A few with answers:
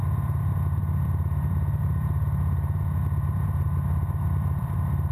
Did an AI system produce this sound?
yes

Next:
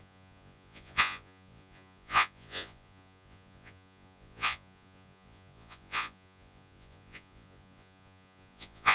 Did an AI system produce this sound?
yes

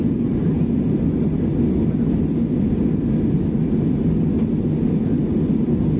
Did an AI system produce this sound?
no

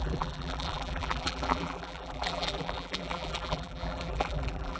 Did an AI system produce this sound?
yes